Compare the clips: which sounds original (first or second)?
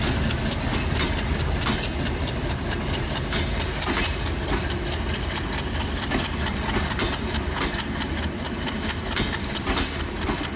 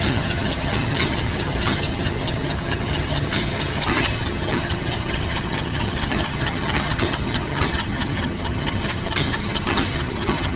first